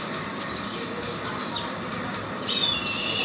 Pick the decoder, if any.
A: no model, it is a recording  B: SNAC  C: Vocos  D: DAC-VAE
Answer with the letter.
A